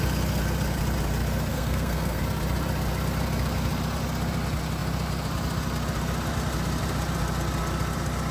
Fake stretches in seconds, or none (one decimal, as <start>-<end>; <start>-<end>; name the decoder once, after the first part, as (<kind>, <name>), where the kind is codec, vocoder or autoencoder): 1.5-2.2 (codec, SNAC)